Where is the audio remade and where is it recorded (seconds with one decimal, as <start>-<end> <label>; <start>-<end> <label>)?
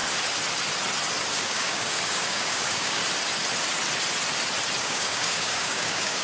0.0-1.3 recorded; 1.3-3.0 remade; 3.0-4.8 recorded; 4.8-6.2 remade